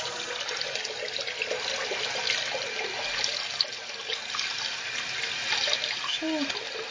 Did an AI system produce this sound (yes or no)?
no